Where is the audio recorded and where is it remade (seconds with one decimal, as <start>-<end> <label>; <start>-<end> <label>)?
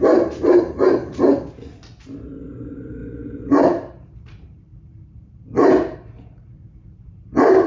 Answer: 0.0-1.3 remade; 1.3-1.9 recorded; 1.9-7.7 remade